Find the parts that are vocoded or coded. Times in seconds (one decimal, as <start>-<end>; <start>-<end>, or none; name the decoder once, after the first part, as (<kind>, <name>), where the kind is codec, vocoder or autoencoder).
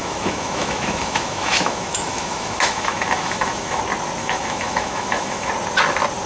0.0-3.8 (autoencoder, DAC-VAE); 4.2-5.5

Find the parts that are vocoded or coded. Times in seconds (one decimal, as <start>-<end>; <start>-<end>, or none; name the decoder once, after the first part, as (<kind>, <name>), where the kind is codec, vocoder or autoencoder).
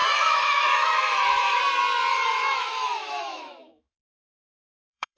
0.0-1.6 (autoencoder, DAC-VAE); 2.1-5.2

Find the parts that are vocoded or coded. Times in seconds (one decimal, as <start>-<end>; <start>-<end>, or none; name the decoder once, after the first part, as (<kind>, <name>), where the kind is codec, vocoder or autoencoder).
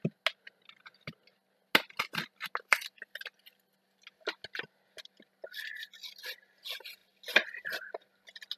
none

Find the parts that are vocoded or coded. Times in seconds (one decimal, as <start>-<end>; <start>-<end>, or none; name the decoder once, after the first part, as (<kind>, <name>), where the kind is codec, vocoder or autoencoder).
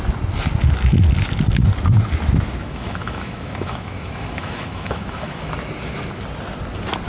2.6-5.5 (autoencoder, DAC-VAE)